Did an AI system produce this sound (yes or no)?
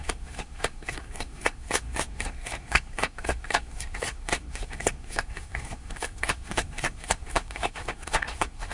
yes